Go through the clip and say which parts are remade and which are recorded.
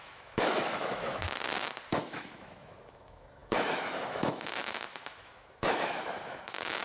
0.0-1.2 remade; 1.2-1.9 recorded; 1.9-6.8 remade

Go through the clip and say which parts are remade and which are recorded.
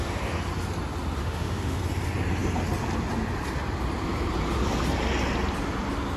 0.0-1.2 recorded; 1.2-1.8 remade; 1.8-6.2 recorded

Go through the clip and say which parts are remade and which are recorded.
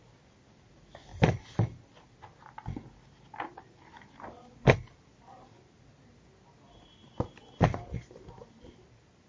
0.0-9.3 recorded